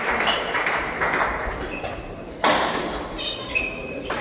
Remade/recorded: remade